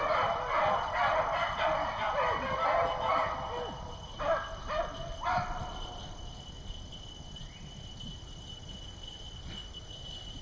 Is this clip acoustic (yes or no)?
yes